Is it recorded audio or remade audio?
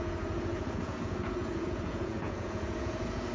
remade